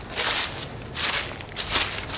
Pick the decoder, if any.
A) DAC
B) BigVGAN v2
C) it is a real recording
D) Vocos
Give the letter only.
C